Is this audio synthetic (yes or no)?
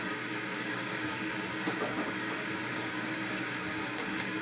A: yes